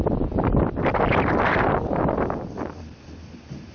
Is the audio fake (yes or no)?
no